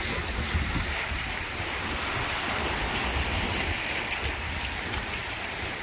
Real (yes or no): yes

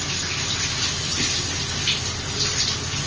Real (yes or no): yes